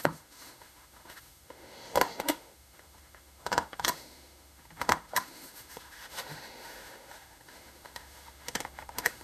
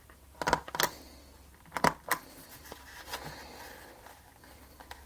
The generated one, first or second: first